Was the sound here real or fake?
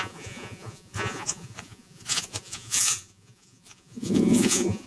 fake